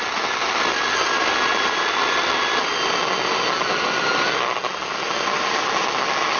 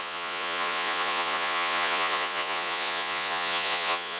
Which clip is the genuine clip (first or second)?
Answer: first